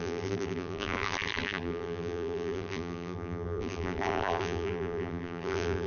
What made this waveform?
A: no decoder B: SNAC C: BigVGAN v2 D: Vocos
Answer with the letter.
C